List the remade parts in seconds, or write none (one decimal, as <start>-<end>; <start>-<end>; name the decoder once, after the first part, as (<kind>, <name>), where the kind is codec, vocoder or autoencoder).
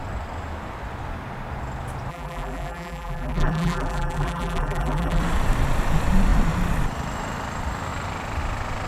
2.1-5.2 (vocoder, BigVGAN v2)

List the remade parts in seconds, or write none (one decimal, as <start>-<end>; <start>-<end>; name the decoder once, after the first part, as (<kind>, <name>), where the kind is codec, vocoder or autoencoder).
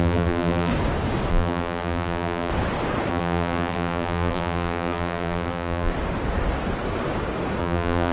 0.0-0.7 (vocoder, BigVGAN v2); 1.3-2.5; 3.1-5.9; 7.6-8.1